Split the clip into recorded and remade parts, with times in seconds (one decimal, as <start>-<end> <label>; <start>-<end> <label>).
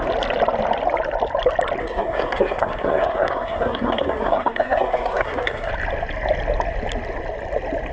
0.0-1.8 recorded; 1.8-5.7 remade; 5.7-7.9 recorded